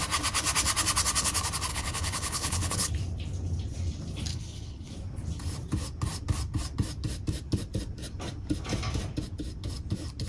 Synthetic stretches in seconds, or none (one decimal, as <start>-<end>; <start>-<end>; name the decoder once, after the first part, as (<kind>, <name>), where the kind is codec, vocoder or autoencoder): 1.7-2.9 (codec, HILCodec); 4.3-4.9